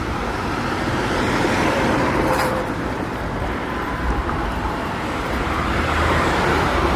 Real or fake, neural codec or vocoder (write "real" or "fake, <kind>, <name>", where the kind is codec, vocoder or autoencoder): fake, vocoder, BigVGAN v2